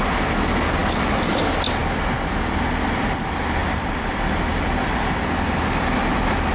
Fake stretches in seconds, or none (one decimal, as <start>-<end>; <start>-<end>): 3.6-4.6